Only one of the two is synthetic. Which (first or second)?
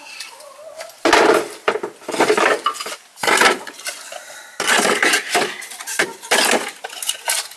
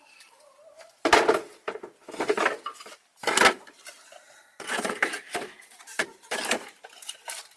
second